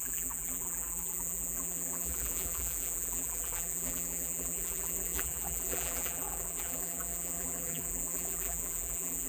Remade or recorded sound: remade